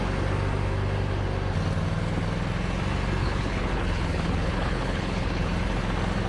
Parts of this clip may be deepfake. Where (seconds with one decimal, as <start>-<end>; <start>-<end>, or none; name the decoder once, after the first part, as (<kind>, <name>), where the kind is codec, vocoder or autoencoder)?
3.2-5.5 (codec, HILCodec)